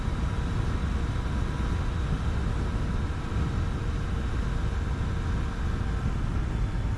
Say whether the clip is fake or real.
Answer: real